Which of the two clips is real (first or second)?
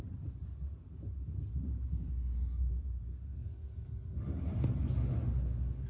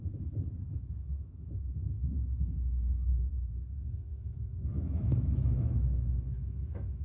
first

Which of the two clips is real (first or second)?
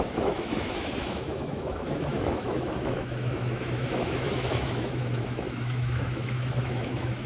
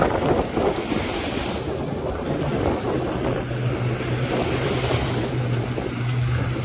second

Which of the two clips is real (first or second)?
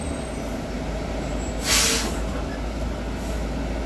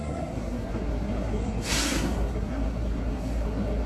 first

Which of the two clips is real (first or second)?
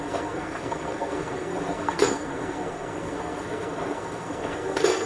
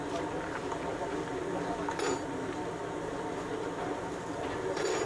second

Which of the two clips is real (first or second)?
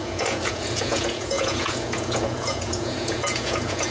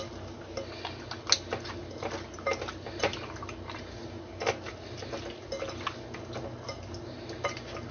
second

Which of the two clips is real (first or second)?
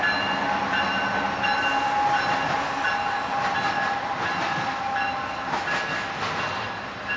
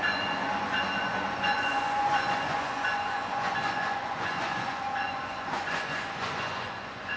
first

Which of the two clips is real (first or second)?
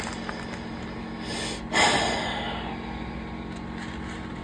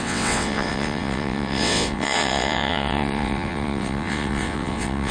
first